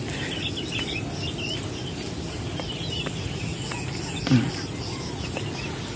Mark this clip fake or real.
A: real